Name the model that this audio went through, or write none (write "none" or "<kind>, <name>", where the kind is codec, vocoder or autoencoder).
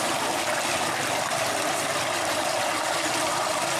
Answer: none